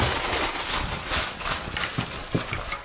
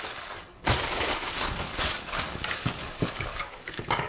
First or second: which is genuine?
first